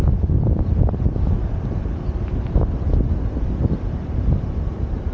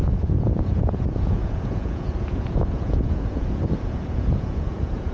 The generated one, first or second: second